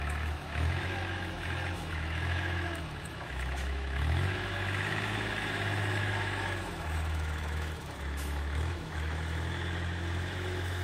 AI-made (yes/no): yes